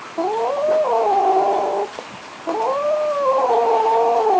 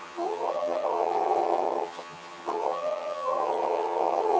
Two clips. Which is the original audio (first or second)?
first